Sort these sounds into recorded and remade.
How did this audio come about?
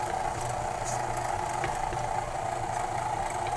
recorded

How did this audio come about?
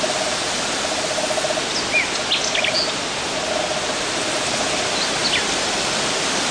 recorded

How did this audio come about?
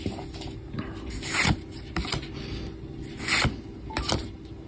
recorded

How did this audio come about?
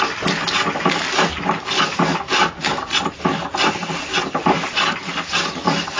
recorded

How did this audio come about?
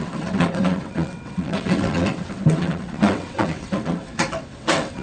remade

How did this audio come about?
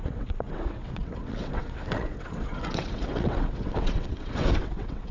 remade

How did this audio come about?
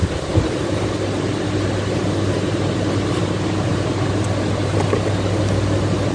recorded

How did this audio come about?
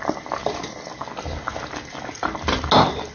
recorded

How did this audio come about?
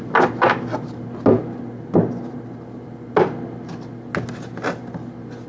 recorded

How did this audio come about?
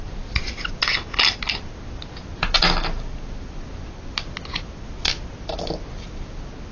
recorded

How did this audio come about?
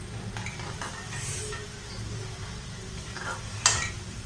recorded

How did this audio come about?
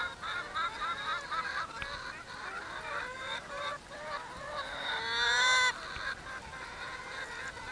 recorded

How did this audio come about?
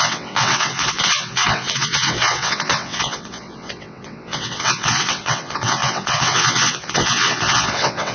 remade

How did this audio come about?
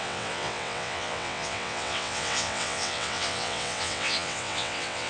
remade